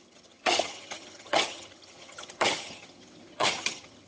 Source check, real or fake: fake